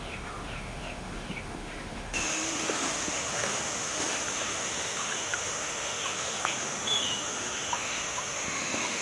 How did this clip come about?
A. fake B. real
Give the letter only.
A